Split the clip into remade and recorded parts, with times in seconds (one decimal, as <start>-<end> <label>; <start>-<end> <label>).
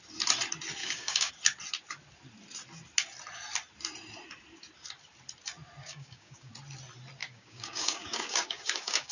0.0-0.8 recorded; 0.8-1.3 remade; 1.3-5.8 recorded; 5.8-6.5 remade; 6.5-7.2 recorded; 7.2-9.1 remade